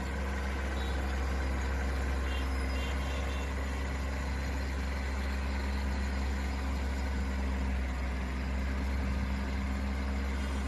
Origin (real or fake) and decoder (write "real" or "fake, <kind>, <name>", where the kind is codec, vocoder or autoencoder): real